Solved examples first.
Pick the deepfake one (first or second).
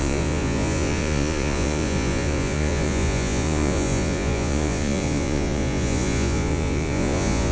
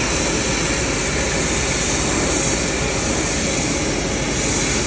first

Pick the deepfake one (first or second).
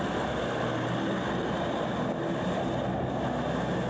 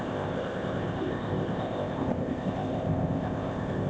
second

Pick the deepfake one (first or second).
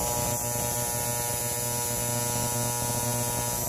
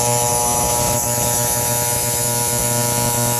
second